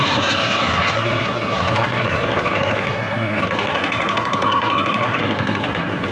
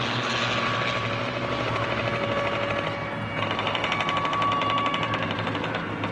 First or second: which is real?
second